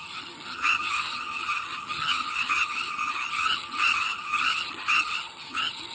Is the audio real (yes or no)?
no